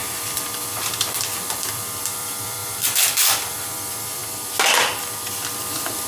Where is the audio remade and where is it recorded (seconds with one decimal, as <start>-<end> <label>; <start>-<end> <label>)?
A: 0.0-4.2 remade; 4.2-5.6 recorded; 5.6-6.1 remade